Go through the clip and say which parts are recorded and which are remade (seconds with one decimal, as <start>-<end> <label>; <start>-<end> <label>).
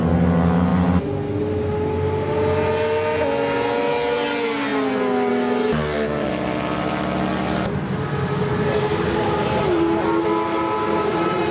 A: 0.0-11.5 recorded